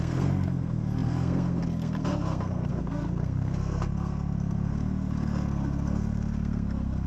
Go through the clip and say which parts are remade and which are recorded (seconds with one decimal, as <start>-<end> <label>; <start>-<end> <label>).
0.0-7.1 remade